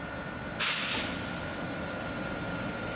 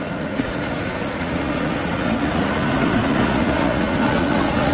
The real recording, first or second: first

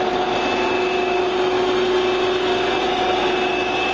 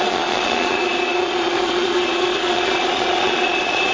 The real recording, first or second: first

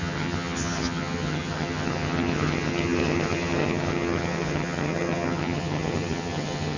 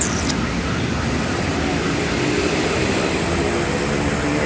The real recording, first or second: second